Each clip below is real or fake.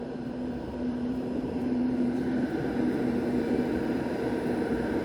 fake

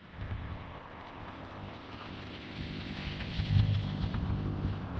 fake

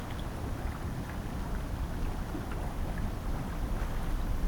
real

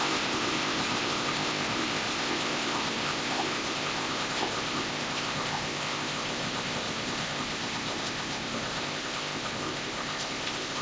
fake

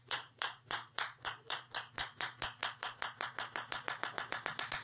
fake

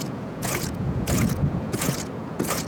fake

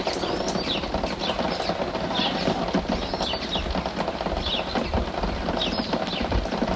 real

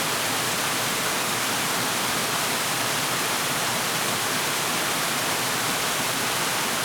fake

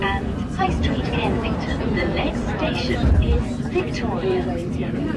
fake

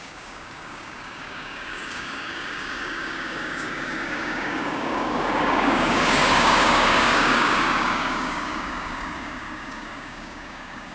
fake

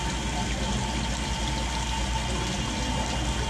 real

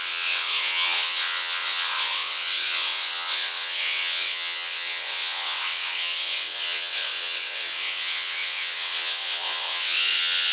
fake